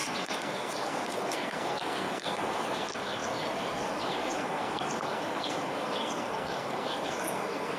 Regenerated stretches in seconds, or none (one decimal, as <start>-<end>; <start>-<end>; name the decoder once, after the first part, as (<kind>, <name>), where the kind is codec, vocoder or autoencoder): 0.0-7.8 (codec, SNAC)